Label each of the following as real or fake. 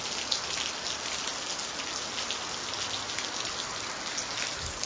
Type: real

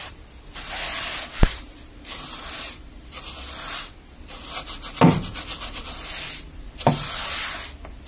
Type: real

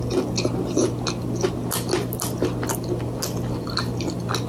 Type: real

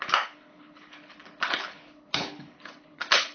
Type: fake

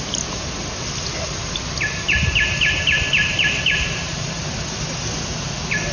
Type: real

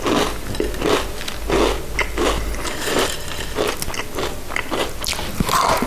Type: real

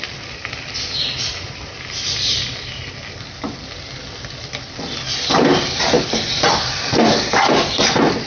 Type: fake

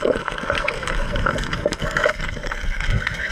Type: fake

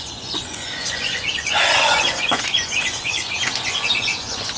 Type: fake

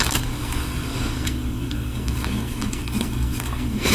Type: fake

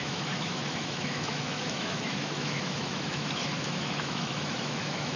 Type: fake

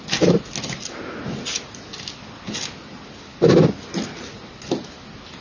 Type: real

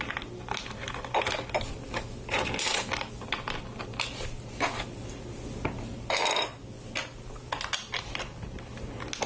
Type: real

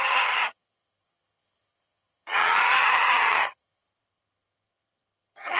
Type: fake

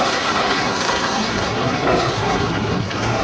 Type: fake